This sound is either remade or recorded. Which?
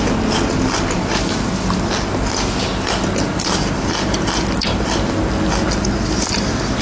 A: recorded